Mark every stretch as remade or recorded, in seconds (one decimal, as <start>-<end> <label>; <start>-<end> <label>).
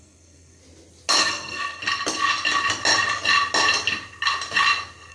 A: 0.0-0.6 remade; 0.6-1.2 recorded; 1.2-1.8 remade; 1.8-5.1 recorded